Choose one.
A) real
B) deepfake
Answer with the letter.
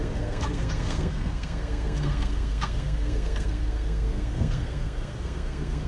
B